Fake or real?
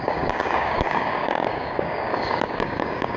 fake